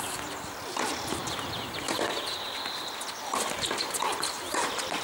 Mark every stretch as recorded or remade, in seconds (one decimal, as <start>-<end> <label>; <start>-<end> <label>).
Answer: 0.0-5.0 recorded